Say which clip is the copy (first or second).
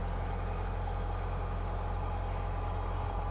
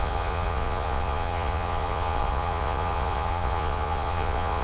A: second